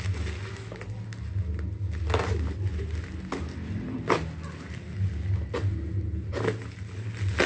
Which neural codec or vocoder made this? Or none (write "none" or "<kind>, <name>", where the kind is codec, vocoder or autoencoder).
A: none